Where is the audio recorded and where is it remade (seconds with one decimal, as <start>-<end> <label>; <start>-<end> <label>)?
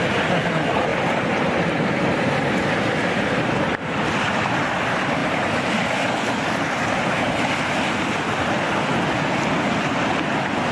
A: 0.0-10.7 recorded